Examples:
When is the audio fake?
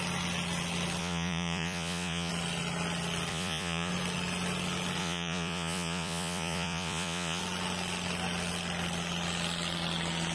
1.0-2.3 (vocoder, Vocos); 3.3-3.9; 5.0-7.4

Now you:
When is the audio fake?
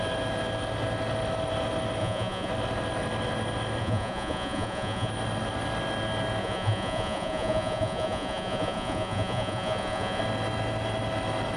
2.0-2.5 (vocoder, Vocos); 3.8-5.1; 6.4-10.2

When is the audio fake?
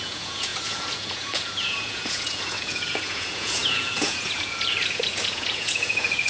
0.0-6.3 (vocoder, Vocos)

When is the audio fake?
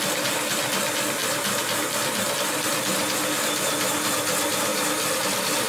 none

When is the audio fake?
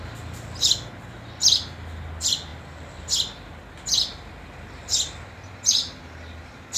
none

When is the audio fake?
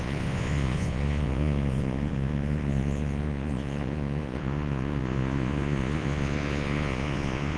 0.0-7.6 (vocoder, Vocos)